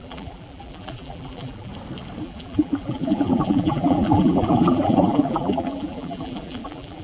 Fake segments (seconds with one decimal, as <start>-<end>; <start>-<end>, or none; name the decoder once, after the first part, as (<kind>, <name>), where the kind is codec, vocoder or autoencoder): 0.0-1.7 (vocoder, BigVGAN v2); 2.2-7.0